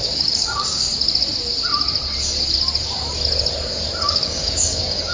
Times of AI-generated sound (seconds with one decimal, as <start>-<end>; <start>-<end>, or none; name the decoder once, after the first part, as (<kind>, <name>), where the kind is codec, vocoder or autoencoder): 0.0-0.9 (codec, DAC); 4.0-5.1